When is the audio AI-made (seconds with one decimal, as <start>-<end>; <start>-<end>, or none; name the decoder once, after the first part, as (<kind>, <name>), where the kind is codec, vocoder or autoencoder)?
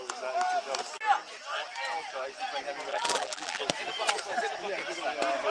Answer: 2.9-3.6 (vocoder, BigVGAN v2)